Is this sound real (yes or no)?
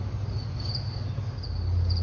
yes